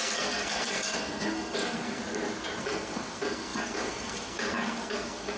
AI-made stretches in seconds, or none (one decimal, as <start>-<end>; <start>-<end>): 0.0-2.0; 2.6-5.4